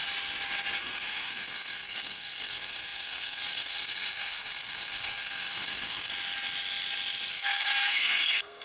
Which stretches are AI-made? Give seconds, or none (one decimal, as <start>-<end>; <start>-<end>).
0.8-6.1; 7.3-8.6

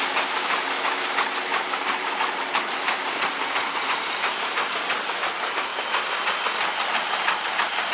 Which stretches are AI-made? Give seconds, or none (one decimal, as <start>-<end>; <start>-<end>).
1.5-4.7

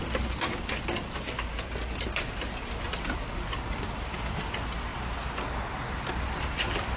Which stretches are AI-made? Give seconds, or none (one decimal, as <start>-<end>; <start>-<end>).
none

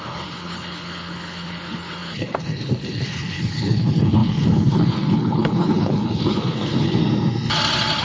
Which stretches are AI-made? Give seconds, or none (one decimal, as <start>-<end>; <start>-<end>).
0.0-7.0

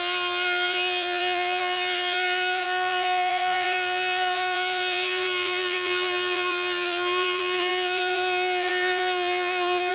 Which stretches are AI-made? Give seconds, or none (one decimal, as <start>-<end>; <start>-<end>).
0.0-9.9

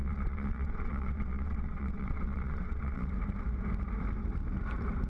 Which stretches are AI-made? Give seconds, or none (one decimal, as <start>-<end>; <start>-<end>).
0.0-3.1